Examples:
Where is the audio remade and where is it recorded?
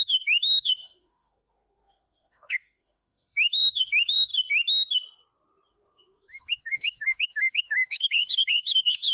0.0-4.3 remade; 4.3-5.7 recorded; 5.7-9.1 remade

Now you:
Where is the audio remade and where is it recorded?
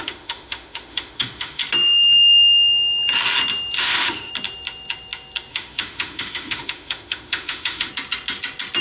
0.0-1.6 remade; 1.6-3.8 recorded; 3.8-4.3 remade; 4.3-5.5 recorded; 5.5-7.9 remade; 7.9-8.8 recorded